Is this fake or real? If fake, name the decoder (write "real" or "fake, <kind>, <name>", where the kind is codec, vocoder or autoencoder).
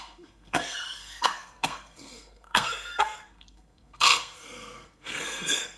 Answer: fake, codec, SNAC